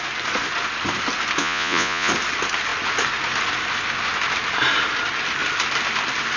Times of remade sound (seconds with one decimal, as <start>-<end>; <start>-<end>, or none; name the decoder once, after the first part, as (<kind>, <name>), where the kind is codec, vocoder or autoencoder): 1.4-2.1 (vocoder, Vocos)